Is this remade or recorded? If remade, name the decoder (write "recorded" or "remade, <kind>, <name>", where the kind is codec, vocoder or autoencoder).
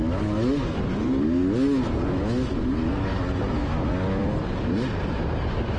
recorded